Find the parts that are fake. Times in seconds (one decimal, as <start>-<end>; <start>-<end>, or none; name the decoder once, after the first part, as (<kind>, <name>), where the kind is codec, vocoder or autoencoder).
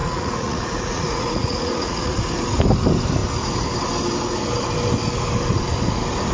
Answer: 0.0-2.2 (vocoder, Vocos)